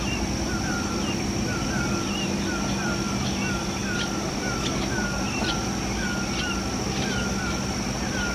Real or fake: real